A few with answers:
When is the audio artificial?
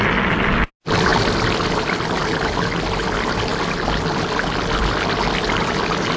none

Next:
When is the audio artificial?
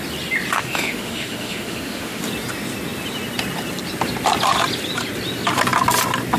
0.6-2.2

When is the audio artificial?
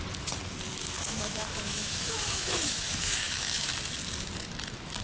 0.7-3.7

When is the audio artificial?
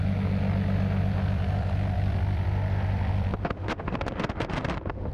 3.4-5.1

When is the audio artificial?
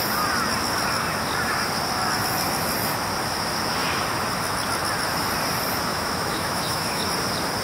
5.9-7.0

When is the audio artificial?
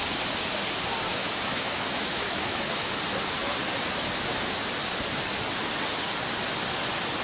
1.1-2.9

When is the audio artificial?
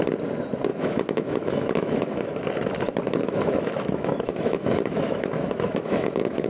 0.7-2.4; 3.2-6.5